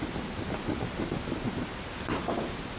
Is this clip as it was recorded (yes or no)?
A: no